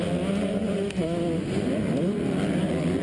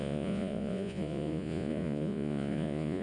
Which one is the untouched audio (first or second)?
first